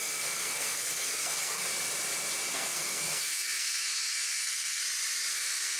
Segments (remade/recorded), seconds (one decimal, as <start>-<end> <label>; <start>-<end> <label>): 0.0-1.7 remade; 1.7-2.5 recorded; 2.5-4.8 remade; 4.8-5.3 recorded; 5.3-5.8 remade

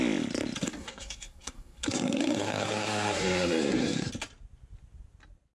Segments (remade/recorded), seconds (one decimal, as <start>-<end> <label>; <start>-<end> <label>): 0.0-0.8 recorded; 0.8-4.1 remade; 4.1-5.5 recorded

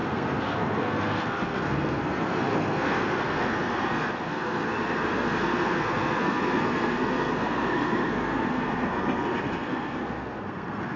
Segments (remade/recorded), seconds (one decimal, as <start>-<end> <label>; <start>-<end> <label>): 0.0-11.0 remade

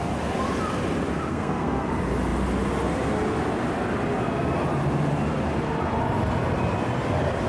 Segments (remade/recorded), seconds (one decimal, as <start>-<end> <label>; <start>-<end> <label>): 0.0-1.3 recorded; 1.3-1.9 remade; 1.9-7.5 recorded

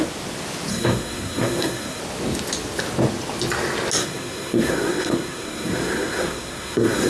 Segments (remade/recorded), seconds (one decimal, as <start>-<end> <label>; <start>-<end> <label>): 0.0-0.7 recorded; 0.7-2.0 remade; 2.0-4.0 recorded; 4.0-7.1 remade